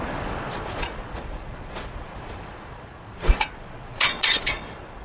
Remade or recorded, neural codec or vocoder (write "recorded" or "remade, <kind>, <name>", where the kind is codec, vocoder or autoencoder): remade, vocoder, Vocos